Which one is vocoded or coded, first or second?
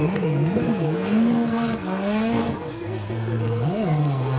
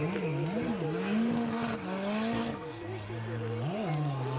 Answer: first